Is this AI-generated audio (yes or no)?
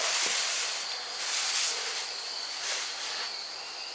no